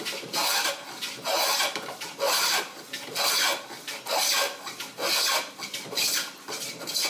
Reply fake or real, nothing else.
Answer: real